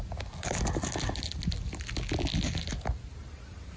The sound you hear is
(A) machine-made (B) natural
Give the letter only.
B